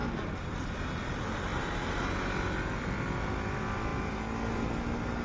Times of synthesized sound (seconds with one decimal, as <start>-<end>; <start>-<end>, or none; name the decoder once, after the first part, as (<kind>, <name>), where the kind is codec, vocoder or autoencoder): none